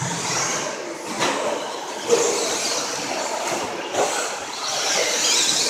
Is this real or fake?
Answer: real